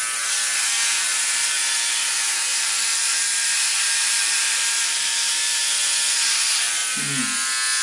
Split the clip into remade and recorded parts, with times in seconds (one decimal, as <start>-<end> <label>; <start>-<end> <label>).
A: 0.0-2.5 recorded; 2.5-5.6 remade; 5.6-7.8 recorded